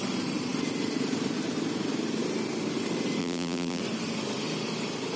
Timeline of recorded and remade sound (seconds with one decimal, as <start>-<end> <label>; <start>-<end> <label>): 0.0-3.2 recorded; 3.2-3.8 remade; 3.8-5.2 recorded